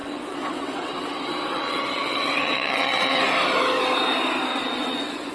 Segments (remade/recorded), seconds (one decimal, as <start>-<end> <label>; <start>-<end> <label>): 0.0-3.2 remade; 3.2-4.5 recorded; 4.5-5.3 remade